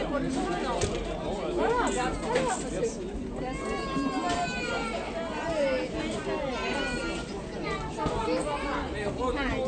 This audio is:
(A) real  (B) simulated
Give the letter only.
A